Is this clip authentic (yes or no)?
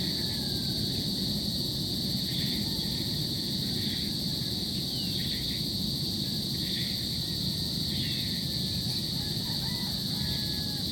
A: yes